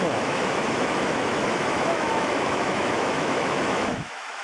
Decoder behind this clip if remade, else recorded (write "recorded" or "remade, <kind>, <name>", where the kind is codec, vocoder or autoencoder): remade, autoencoder, DAC-VAE